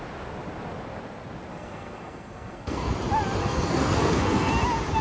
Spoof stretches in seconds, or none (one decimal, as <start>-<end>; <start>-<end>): 1.5-2.9; 3.4-4.5